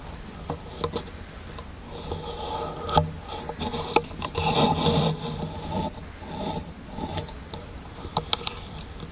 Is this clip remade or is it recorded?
recorded